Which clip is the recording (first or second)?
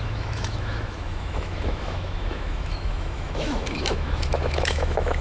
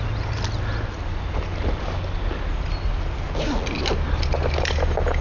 second